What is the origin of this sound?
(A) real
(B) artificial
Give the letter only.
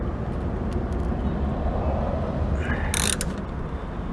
A